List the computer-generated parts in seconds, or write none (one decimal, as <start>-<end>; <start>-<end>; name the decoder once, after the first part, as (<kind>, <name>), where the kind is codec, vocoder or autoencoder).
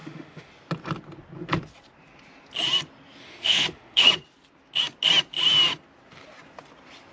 0.0-0.5 (autoencoder, DAC-VAE); 3.2-4.1